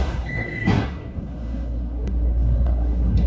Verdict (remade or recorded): remade